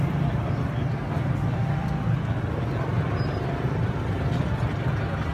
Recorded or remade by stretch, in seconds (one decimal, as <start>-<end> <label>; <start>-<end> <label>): 0.0-2.9 recorded; 2.9-4.4 remade; 4.4-5.3 recorded